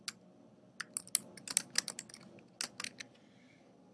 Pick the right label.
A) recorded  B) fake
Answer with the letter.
A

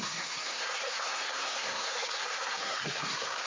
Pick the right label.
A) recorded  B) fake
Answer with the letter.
B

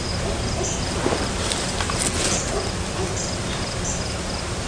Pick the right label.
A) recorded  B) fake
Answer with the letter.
A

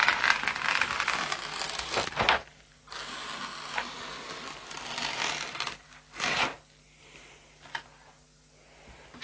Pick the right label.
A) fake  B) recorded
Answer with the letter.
B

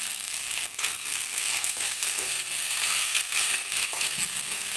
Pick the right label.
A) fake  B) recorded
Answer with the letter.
A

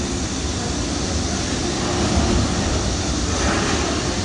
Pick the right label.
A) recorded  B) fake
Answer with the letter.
A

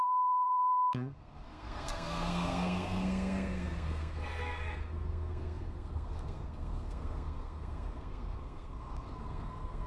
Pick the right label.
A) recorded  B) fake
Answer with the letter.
B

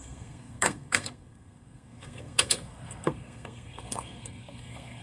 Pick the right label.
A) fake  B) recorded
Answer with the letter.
A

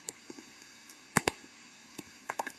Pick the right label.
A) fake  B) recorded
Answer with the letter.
A